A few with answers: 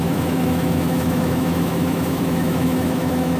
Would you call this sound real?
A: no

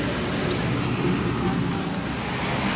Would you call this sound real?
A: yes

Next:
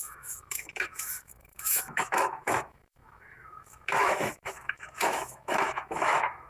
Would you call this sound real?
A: no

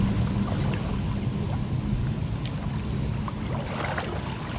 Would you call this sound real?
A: yes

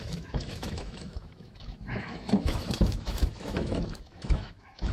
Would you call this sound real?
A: no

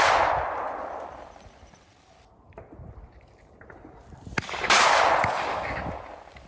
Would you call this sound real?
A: yes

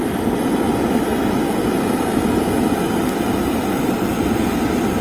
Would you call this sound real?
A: yes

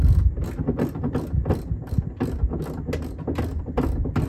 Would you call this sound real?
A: yes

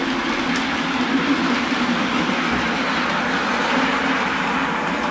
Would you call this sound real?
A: yes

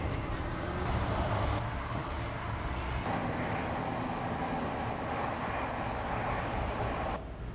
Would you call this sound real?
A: yes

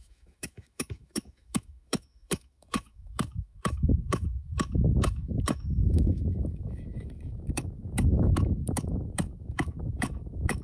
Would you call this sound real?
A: no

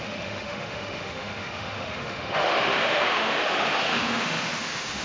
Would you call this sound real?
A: no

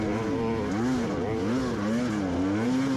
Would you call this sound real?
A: yes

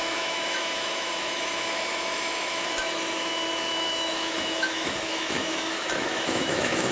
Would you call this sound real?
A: no